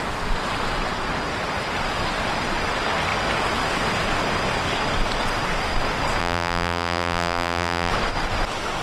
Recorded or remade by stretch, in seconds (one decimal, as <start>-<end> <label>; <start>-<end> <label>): 0.0-6.2 recorded; 6.2-7.9 remade; 7.9-8.8 recorded